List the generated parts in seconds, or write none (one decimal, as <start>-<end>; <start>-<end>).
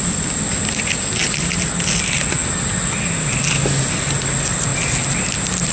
none